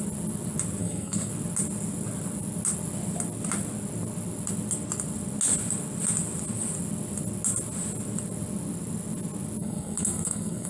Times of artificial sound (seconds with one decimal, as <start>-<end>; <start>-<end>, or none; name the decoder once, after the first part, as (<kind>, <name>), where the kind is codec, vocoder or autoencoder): 0.8-1.3 (codec, SNAC); 9.6-10.7